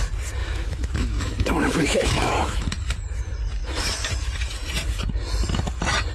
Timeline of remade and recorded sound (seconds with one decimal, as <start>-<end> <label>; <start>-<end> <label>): 0.0-0.4 recorded; 0.4-2.6 remade; 2.6-6.1 recorded